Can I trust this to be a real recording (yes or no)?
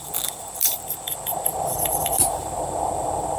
no